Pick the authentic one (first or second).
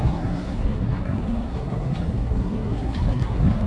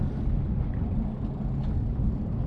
second